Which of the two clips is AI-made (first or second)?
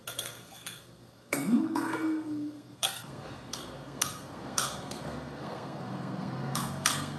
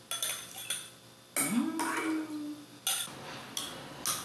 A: first